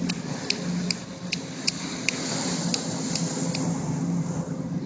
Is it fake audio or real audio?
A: real